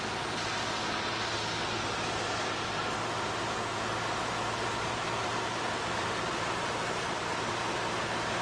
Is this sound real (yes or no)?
yes